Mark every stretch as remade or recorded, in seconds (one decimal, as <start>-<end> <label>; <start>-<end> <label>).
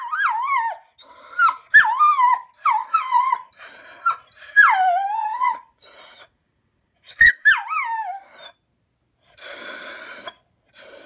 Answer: 0.0-2.8 recorded; 2.8-3.5 remade; 3.5-5.2 recorded; 5.2-7.3 remade; 7.3-11.1 recorded